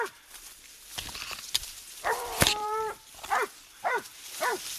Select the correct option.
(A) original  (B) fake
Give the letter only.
B